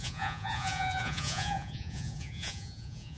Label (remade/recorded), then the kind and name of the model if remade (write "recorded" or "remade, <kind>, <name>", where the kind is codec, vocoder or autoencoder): remade, vocoder, Vocos